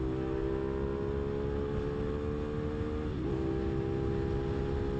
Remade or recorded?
recorded